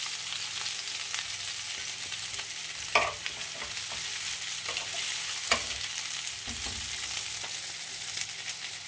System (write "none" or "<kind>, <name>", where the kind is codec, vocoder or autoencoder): none